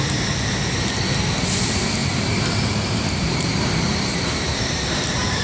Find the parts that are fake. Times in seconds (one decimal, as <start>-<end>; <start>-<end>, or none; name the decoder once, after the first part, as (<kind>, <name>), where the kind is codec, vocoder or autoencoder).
2.0-5.4 (vocoder, BigVGAN v2)